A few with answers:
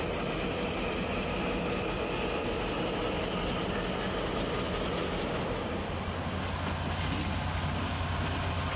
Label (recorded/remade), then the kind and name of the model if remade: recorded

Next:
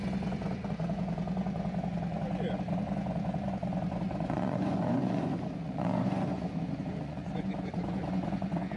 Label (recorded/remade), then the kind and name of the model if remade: remade, vocoder, Vocos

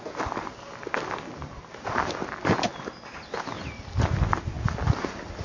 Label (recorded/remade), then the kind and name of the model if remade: recorded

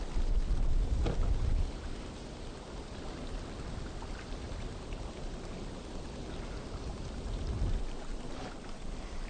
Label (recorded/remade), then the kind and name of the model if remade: recorded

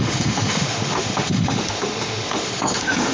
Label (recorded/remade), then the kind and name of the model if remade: remade, autoencoder, DAC-VAE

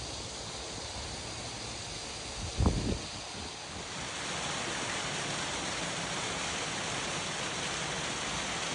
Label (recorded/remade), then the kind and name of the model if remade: recorded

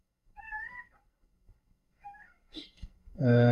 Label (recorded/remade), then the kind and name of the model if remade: remade, codec, SNAC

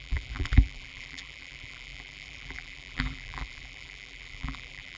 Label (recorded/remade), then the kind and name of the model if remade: remade, vocoder, BigVGAN v2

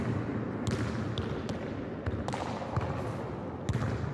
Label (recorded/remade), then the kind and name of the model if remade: recorded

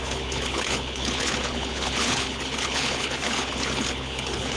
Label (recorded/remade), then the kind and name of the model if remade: remade, codec, HILCodec